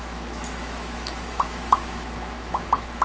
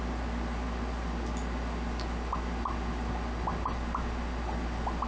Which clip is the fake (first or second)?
first